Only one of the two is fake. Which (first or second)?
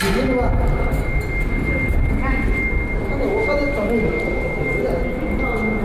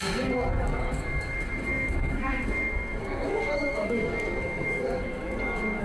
second